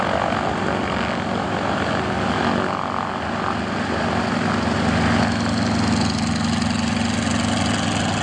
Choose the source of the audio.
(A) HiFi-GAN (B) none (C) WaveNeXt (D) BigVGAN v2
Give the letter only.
B